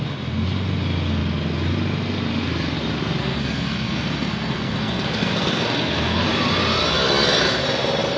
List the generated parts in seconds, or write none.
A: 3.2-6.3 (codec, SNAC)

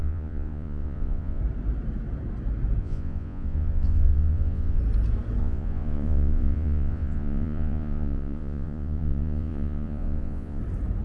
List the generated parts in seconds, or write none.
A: 0.0-1.4 (vocoder, Vocos); 2.8-4.8; 5.4-10.6